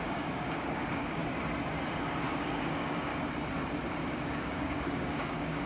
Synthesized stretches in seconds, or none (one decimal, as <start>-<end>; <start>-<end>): 0.0-1.2; 2.0-3.1; 4.0-5.7